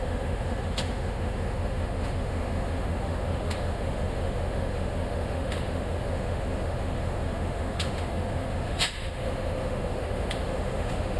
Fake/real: fake